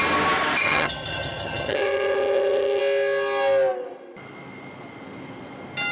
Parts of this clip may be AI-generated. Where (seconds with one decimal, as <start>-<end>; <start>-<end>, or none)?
0.6-2.8

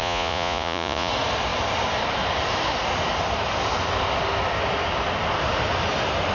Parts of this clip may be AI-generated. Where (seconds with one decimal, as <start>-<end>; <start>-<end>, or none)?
0.0-1.1

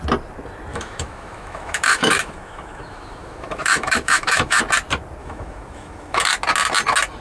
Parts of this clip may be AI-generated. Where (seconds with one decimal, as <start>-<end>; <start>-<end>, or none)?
0.7-4.6; 5.2-6.3